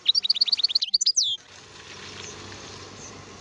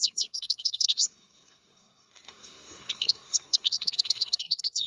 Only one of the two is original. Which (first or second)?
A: first